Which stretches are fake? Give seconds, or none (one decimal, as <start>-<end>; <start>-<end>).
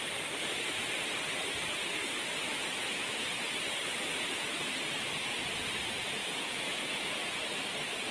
2.8-3.3; 6.2-7.2